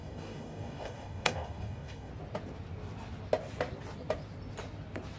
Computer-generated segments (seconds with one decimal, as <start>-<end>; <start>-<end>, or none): 0.0-2.1